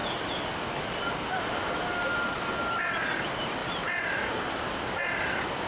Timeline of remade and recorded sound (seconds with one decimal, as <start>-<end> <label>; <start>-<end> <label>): 0.0-5.7 recorded